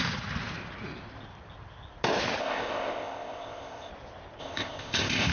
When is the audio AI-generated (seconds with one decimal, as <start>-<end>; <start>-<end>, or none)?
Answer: 2.4-3.9; 4.4-5.3